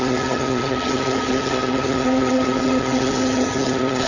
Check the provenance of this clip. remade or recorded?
remade